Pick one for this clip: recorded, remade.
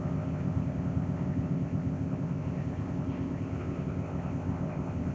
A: remade